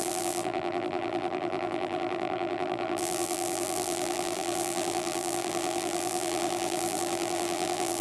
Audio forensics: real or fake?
fake